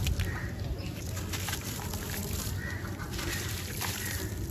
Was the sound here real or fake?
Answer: fake